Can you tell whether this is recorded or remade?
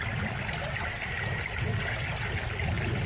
recorded